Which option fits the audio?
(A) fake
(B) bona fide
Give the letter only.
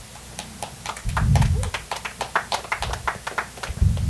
B